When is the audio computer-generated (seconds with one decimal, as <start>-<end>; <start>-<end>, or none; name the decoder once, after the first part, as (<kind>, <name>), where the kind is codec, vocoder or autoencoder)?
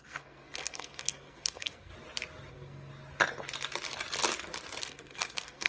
0.0-1.9 (codec, SNAC); 2.5-2.9; 4.8-5.7